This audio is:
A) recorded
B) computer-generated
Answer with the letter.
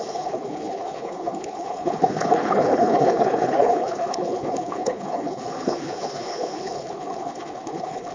B